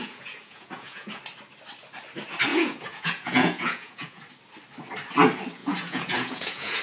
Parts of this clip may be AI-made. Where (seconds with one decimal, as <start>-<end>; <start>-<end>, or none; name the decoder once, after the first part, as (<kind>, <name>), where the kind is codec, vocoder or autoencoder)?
0.0-1.2 (vocoder, Vocos); 2.5-4.2; 5.6-6.8